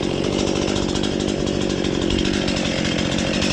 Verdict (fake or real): real